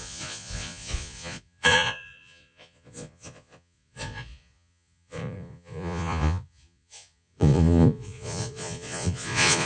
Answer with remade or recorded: remade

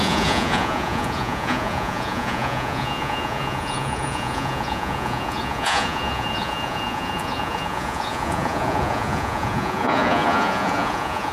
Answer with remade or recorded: remade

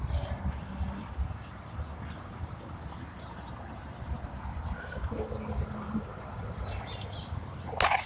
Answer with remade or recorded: recorded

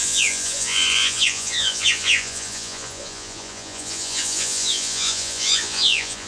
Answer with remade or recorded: remade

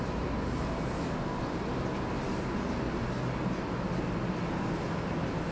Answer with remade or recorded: recorded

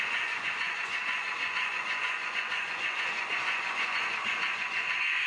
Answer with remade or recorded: remade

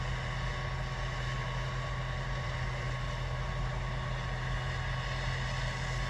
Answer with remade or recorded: recorded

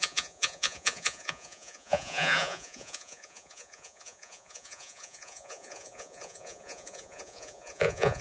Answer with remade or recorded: remade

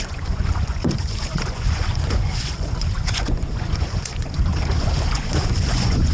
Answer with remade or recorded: remade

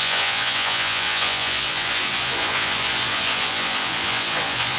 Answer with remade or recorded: remade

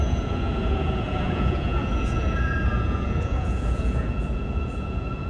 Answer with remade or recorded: remade